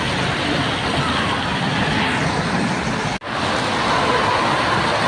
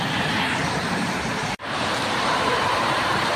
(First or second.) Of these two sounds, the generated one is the second